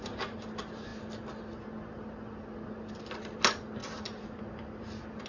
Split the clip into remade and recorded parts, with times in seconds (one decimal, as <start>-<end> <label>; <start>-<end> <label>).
0.0-5.3 recorded